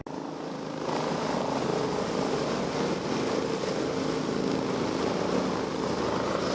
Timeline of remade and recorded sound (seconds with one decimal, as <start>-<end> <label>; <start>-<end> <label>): 0.0-6.5 recorded